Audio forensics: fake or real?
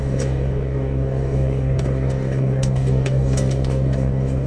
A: fake